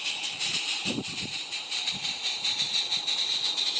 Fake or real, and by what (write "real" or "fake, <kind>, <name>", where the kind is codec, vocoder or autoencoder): fake, vocoder, BigVGAN v2